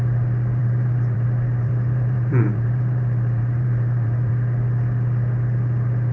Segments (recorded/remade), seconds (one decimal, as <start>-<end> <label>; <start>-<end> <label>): 0.0-0.6 recorded; 0.6-4.3 remade; 4.3-6.1 recorded